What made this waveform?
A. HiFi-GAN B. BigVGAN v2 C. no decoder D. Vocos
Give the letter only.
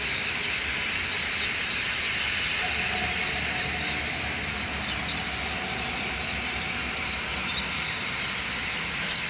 C